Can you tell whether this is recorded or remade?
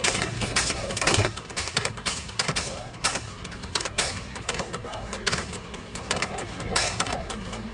remade